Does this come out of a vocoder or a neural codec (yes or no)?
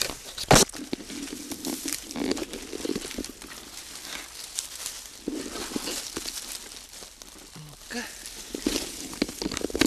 no